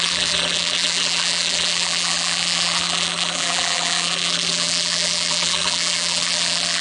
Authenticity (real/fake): fake